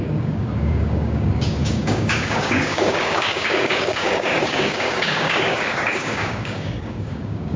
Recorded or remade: remade